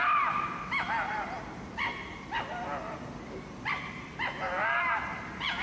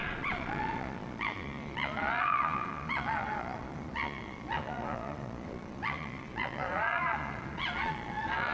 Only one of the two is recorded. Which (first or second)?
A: first